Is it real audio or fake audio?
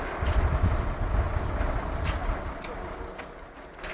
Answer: real